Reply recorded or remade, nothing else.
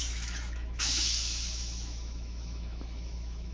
remade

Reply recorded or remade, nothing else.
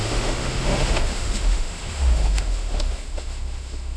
remade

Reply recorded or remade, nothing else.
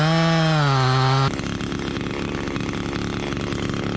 recorded